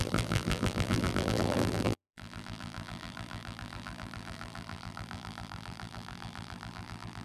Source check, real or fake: fake